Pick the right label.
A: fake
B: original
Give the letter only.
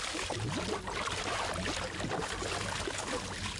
B